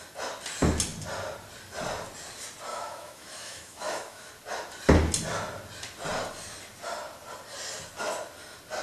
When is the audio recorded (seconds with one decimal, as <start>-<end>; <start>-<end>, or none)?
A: 0.0-2.7; 4.3-8.8